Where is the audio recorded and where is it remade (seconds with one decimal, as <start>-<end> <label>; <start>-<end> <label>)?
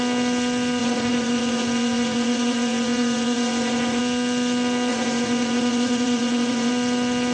0.0-0.8 recorded; 0.8-4.0 remade; 4.0-4.9 recorded; 4.9-6.7 remade; 6.7-7.3 recorded